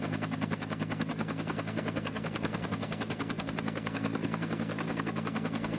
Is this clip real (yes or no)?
no